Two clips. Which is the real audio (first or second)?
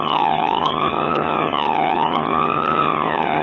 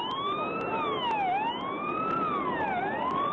second